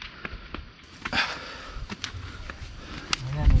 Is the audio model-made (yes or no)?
no